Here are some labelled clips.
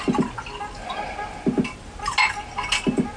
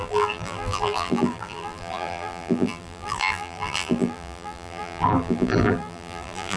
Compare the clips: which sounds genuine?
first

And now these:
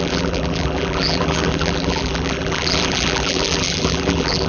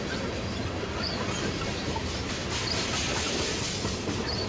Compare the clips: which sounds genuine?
second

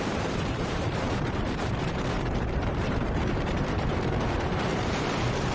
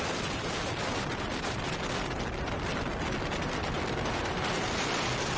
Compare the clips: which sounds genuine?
second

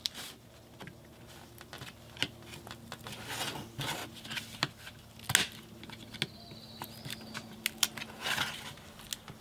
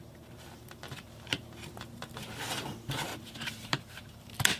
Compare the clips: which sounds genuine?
first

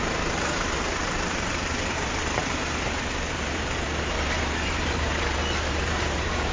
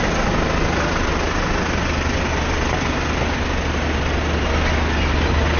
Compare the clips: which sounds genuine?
second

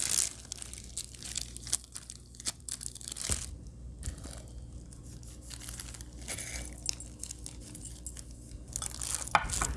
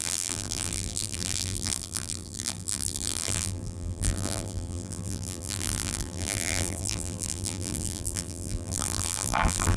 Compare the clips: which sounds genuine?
first